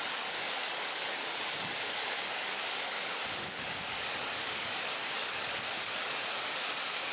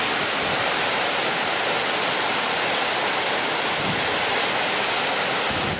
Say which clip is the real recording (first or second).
second